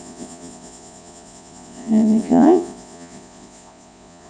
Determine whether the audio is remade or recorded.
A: remade